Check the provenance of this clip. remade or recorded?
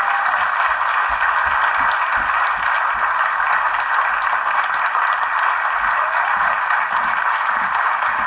recorded